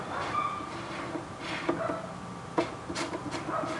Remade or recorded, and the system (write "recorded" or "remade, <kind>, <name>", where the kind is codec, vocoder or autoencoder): recorded